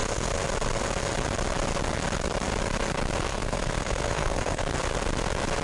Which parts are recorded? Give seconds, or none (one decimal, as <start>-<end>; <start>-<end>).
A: 0.0-3.3; 4.6-5.6